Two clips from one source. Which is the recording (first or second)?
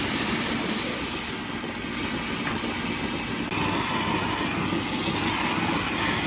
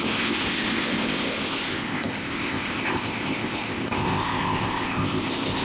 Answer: first